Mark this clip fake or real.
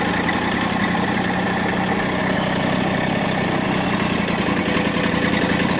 real